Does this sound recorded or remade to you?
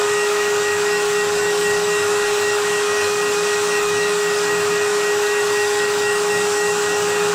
remade